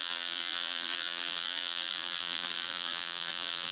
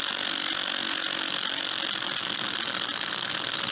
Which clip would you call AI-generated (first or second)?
first